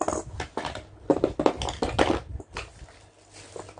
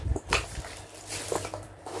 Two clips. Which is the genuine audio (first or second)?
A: first